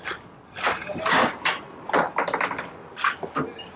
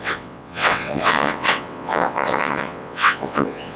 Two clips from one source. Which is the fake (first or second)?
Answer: second